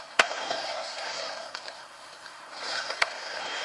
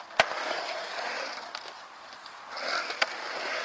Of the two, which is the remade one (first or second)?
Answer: first